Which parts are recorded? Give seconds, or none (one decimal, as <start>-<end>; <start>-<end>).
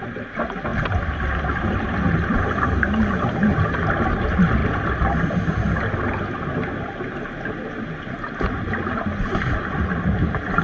0.0-10.6